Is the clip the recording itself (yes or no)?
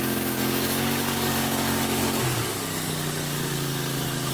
no